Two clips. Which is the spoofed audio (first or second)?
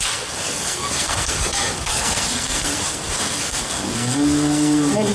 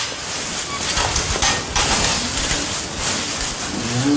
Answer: first